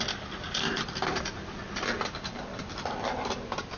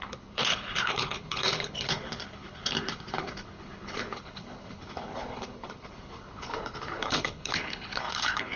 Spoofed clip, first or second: second